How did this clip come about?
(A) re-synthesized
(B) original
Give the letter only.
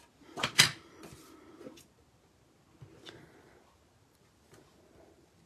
B